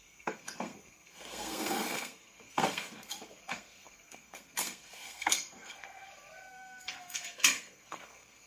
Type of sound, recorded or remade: remade